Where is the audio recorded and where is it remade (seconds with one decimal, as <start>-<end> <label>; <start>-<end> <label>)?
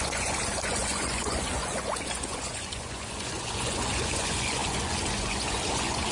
0.0-6.1 remade